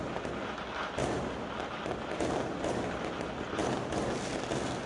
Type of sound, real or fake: real